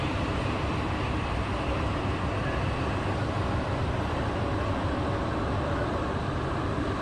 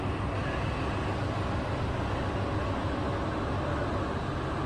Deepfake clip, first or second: first